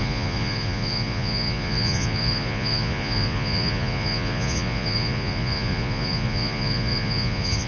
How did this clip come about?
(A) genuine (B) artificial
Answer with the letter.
B